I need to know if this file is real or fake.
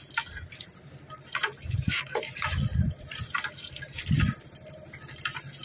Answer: fake